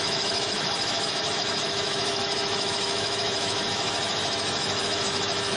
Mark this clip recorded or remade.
remade